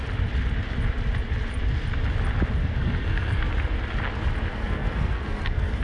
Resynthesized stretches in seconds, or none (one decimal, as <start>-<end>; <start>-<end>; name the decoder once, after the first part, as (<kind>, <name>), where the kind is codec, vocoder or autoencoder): 2.6-3.5 (codec, SNAC); 4.5-5.8